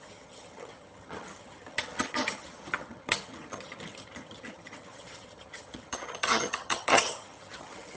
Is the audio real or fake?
fake